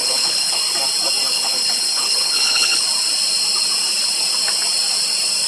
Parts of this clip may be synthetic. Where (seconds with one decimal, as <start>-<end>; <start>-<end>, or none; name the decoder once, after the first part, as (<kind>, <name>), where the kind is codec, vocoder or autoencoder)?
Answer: 0.0-0.6 (codec, HILCodec); 1.3-2.8